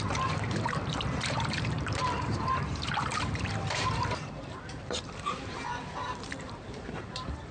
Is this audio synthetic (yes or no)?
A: yes